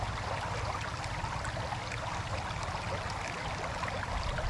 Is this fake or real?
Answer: real